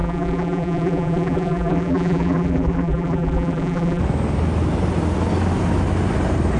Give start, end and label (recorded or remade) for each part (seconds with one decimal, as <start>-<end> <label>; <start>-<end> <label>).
0.0-4.0 remade; 4.0-6.6 recorded